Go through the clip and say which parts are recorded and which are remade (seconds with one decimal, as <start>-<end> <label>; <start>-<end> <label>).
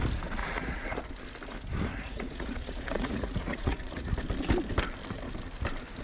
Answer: 0.0-0.4 recorded; 0.4-1.0 remade; 1.0-1.9 recorded; 1.9-4.1 remade; 4.1-6.0 recorded